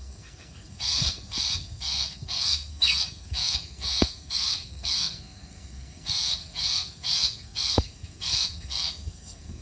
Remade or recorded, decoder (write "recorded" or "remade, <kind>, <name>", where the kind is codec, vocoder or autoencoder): remade, codec, SNAC